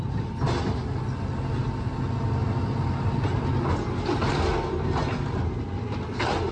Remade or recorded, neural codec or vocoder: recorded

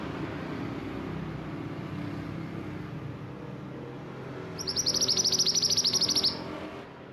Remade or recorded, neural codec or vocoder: recorded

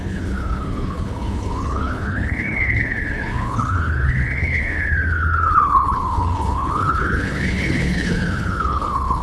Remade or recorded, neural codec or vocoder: remade, codec, HILCodec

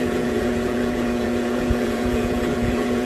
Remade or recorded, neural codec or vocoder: remade, vocoder, Vocos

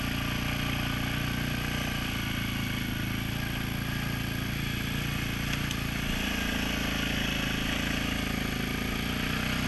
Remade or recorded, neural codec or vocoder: recorded